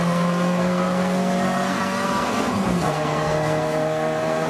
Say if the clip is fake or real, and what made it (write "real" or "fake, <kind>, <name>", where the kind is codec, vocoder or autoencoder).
fake, codec, SNAC